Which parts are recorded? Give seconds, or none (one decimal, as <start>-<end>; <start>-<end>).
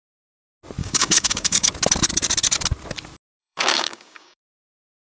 0.0-0.8; 1.7-3.4; 4.4-5.2